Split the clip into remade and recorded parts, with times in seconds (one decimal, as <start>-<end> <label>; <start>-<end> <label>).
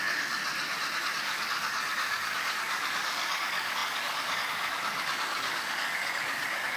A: 0.0-0.4 remade; 0.4-1.0 recorded; 1.0-6.8 remade